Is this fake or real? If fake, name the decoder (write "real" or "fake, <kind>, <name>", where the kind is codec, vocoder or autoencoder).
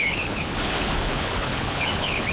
fake, codec, HILCodec